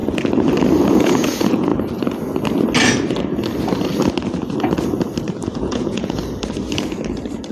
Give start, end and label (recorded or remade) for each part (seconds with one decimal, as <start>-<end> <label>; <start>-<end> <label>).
0.0-0.9 recorded; 0.9-1.7 remade; 1.7-5.6 recorded; 5.6-6.2 remade; 6.2-7.5 recorded